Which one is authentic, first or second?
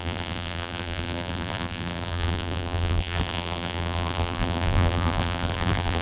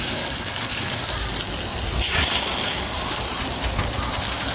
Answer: second